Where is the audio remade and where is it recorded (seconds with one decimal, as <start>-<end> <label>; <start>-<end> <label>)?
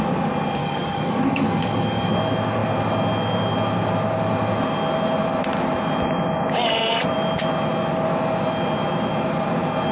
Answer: 0.0-0.6 recorded; 0.6-2.1 remade; 2.1-9.9 recorded